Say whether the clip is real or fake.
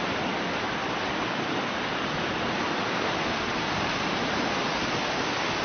real